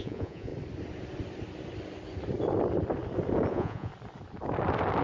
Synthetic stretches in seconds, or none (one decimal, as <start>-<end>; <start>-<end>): 0.0-0.5; 3.5-3.9

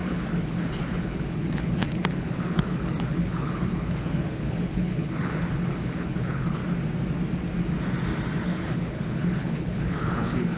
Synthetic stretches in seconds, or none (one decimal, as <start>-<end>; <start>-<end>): 0.0-6.6; 8.4-10.6

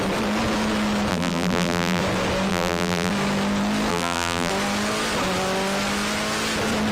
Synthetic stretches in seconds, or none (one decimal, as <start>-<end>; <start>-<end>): 1.1-2.0; 2.5-3.1; 3.9-4.5

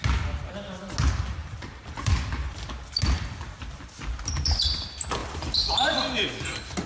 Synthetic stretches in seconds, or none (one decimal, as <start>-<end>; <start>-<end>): 1.4-2.7; 5.2-5.9

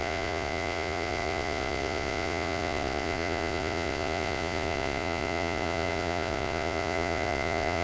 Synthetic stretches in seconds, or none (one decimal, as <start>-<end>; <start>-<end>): 0.0-7.8